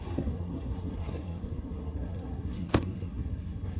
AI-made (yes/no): yes